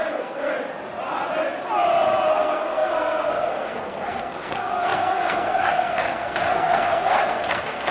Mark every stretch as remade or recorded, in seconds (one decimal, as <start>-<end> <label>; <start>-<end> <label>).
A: 0.0-0.5 remade; 0.5-2.3 recorded; 2.3-7.9 remade